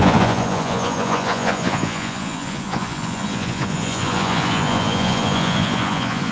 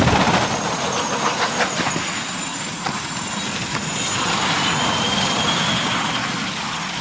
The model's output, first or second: first